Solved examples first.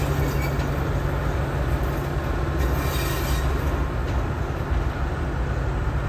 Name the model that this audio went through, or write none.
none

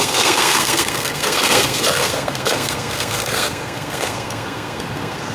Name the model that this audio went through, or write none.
codec, SNAC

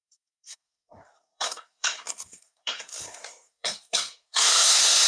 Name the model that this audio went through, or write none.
codec, SNAC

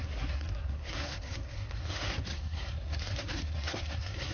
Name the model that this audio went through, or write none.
codec, SNAC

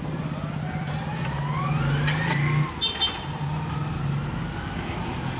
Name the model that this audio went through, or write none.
none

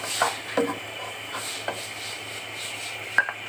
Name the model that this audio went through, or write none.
none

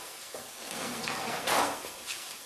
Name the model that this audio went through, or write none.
codec, SNAC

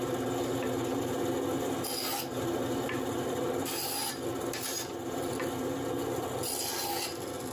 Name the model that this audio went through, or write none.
none